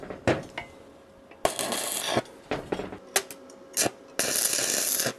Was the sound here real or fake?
real